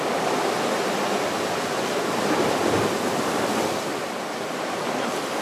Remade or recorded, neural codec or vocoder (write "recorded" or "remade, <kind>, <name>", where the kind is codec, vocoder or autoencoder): recorded